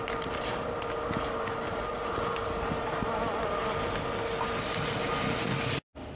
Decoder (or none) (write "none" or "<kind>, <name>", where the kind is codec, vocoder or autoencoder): none